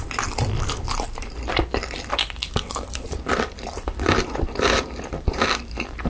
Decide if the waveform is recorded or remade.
remade